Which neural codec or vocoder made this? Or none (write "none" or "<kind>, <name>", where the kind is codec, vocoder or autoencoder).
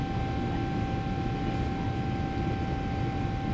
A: none